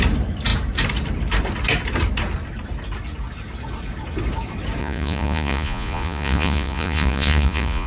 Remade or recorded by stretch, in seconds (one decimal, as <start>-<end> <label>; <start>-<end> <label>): 0.0-4.8 recorded; 4.8-7.9 remade

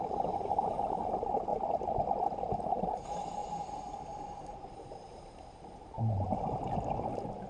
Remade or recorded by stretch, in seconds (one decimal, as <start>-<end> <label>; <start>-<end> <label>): 0.0-1.5 remade; 1.5-2.7 recorded; 2.7-7.5 remade

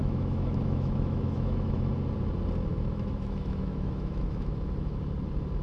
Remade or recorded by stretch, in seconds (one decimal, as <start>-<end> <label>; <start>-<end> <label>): 0.0-1.9 remade; 1.9-2.7 recorded; 2.7-4.9 remade; 4.9-5.6 recorded

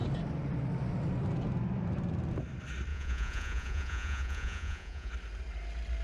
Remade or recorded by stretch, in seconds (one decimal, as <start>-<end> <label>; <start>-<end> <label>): 0.0-2.9 recorded; 2.9-5.1 remade; 5.1-6.0 recorded

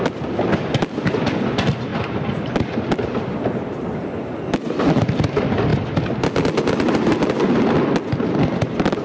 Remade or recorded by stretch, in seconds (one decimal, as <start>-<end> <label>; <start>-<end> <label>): 0.0-9.0 recorded